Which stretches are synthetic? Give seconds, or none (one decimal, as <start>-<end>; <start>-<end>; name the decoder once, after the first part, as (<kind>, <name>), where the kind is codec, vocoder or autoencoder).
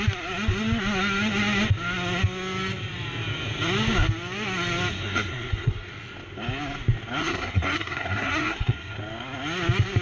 4.9-5.9 (codec, SNAC); 7.2-9.0